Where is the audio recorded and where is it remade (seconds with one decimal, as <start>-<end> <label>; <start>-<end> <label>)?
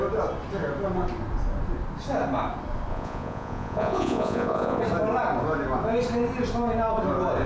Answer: 0.0-2.9 recorded; 2.9-4.8 remade; 4.8-7.5 recorded